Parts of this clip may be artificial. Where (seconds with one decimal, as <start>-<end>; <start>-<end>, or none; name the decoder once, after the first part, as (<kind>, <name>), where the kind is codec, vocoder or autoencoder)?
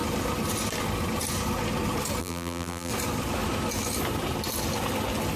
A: 2.2-2.9 (vocoder, BigVGAN v2)